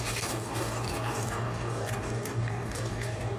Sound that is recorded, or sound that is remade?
remade